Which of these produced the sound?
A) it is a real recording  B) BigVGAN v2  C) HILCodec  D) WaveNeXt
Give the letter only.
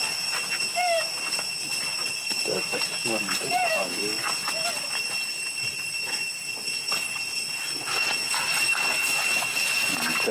A